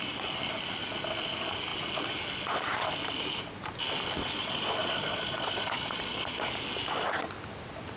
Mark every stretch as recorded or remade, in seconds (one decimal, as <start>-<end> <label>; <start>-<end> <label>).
0.0-4.2 recorded; 4.2-6.5 remade; 6.5-8.0 recorded